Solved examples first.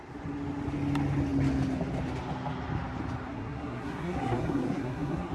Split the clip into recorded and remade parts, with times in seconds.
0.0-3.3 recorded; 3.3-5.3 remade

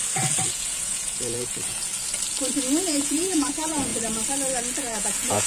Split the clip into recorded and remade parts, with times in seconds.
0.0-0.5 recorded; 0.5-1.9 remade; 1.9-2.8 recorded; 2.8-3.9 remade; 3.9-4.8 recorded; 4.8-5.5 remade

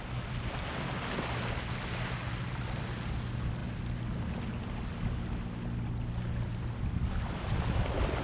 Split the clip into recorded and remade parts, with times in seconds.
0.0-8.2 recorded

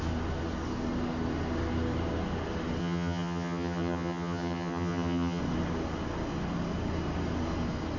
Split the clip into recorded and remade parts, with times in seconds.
0.0-2.8 recorded; 2.8-5.4 remade; 5.4-8.0 recorded

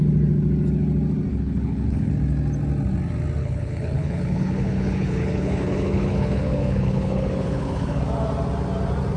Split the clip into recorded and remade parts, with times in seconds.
0.0-1.3 recorded; 1.3-2.1 remade; 2.1-3.4 recorded; 3.4-8.0 remade; 8.0-9.2 recorded

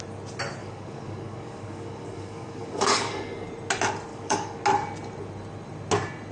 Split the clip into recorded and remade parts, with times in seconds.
0.0-0.6 recorded; 0.6-3.5 remade; 3.5-4.1 recorded; 4.1-4.6 remade; 4.6-6.3 recorded

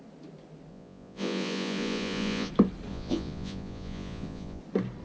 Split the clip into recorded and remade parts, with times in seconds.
0.0-0.7 recorded; 0.7-2.5 remade; 2.5-2.9 recorded; 2.9-4.6 remade; 4.6-5.0 recorded

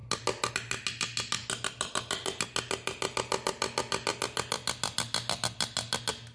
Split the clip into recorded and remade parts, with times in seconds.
0.0-6.3 recorded